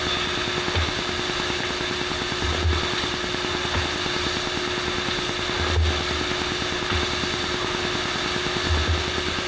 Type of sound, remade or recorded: recorded